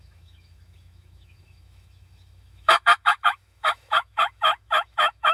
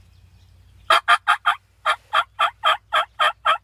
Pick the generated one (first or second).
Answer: first